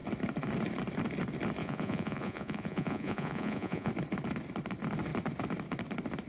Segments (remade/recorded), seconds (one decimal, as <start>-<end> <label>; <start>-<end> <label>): 0.0-1.6 recorded; 1.6-3.9 remade; 3.9-6.3 recorded